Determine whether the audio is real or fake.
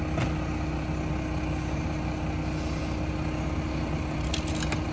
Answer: real